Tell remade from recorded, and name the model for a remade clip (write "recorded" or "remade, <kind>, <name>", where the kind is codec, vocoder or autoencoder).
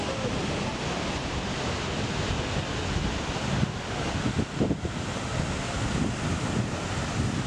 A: recorded